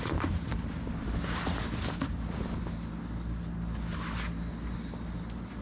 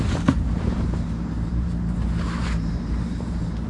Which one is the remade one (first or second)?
second